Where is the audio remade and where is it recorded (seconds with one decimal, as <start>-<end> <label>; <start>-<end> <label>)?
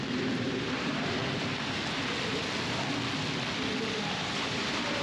0.0-1.2 remade; 1.2-4.2 recorded; 4.2-5.0 remade